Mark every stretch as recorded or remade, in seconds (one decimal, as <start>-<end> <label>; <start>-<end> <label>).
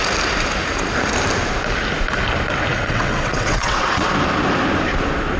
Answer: 0.0-2.7 recorded; 2.7-4.1 remade; 4.1-5.4 recorded